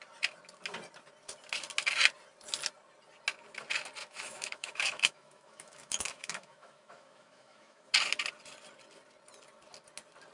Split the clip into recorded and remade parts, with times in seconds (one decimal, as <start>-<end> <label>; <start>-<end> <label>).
0.0-4.0 recorded; 4.0-7.9 remade; 7.9-10.3 recorded